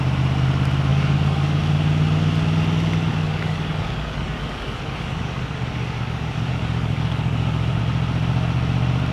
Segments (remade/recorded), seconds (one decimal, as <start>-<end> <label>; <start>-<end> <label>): 0.0-0.9 recorded; 0.9-1.6 remade; 1.6-3.1 recorded; 3.1-7.8 remade; 7.8-9.1 recorded